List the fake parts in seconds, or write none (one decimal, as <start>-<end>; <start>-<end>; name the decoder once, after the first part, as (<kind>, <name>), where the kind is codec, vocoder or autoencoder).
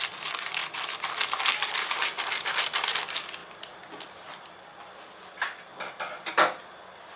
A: none